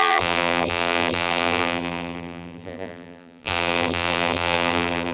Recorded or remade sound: remade